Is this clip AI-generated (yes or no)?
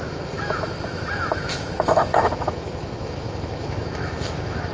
yes